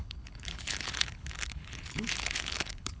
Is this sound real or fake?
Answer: fake